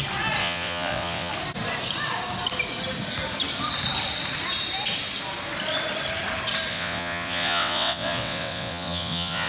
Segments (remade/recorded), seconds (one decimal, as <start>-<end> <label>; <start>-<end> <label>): 0.0-0.4 recorded; 0.4-1.3 remade; 1.3-6.7 recorded; 6.7-9.5 remade